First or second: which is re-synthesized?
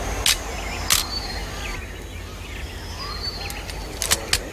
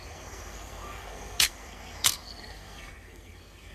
second